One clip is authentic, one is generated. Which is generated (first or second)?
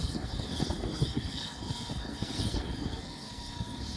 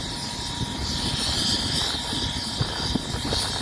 first